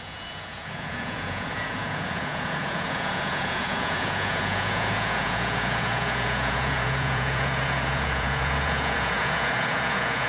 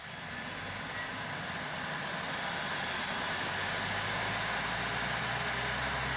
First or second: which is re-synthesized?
first